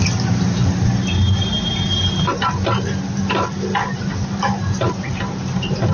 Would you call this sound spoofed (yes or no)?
no